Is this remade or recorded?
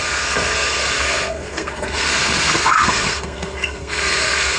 remade